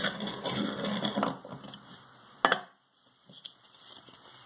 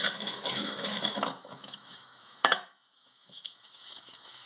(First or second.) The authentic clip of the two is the first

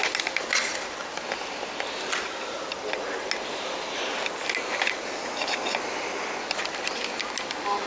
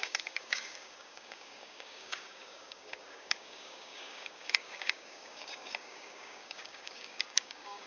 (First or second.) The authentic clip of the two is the first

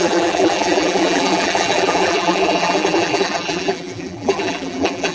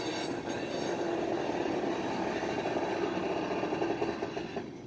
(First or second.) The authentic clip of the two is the second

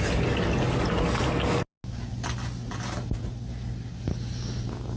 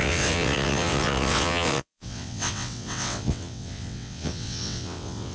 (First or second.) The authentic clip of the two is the first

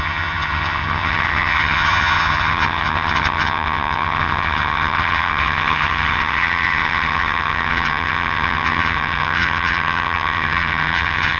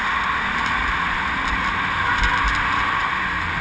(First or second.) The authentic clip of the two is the second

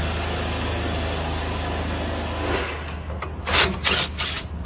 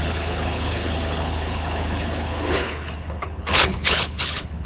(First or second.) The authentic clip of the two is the first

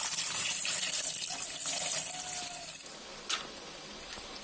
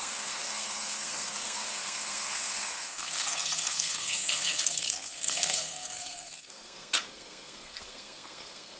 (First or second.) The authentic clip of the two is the first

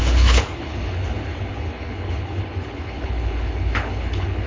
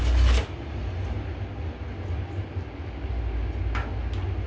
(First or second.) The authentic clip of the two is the second